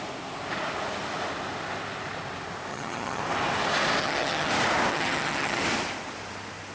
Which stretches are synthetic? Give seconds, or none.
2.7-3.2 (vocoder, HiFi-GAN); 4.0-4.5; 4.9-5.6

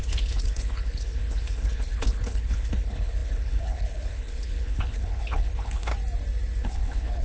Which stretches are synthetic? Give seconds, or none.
0.0-5.9 (codec, HILCodec); 6.6-7.2